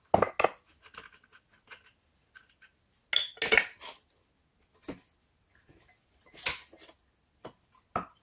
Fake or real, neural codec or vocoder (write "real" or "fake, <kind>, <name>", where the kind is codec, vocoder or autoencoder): real